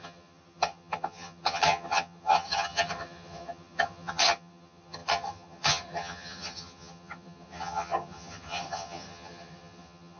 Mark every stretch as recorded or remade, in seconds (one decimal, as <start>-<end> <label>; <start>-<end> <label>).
0.0-10.2 remade